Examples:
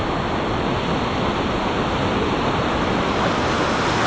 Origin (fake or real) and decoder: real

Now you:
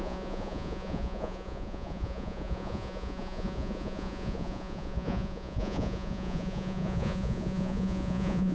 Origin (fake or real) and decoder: fake, vocoder, Vocos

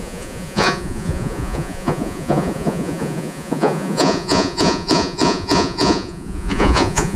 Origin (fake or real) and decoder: fake, vocoder, Vocos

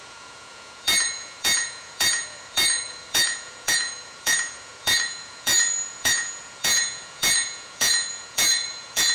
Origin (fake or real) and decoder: fake, vocoder, Vocos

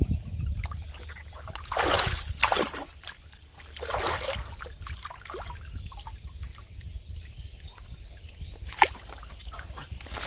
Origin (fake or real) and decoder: real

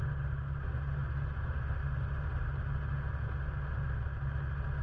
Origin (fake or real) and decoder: real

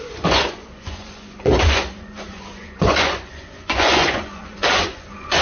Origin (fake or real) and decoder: fake, vocoder, Vocos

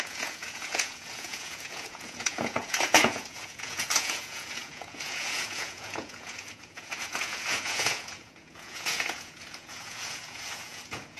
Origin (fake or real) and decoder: fake, vocoder, Vocos